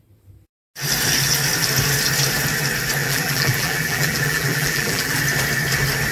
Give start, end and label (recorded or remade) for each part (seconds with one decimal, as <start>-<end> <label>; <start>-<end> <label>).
0.0-3.0 recorded; 3.0-5.2 remade; 5.2-6.1 recorded

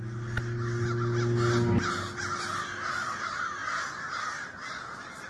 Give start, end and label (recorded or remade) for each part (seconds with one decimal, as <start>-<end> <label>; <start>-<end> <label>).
0.0-5.3 recorded